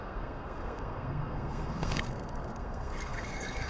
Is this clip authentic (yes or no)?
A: no